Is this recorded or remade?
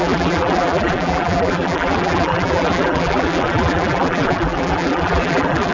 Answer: remade